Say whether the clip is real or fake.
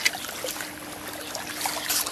real